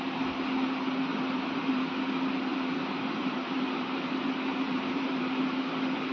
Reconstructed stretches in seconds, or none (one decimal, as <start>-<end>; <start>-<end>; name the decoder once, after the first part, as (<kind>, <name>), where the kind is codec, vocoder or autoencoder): 1.1-2.0 (vocoder, BigVGAN v2); 2.5-4.1; 4.5-5.4